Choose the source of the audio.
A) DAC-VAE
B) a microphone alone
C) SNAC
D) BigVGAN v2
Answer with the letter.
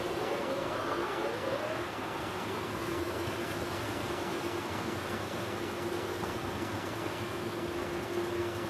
C